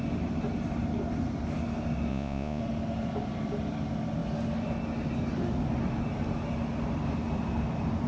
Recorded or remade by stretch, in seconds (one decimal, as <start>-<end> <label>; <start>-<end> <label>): 0.0-2.1 recorded; 2.1-2.6 remade; 2.6-8.1 recorded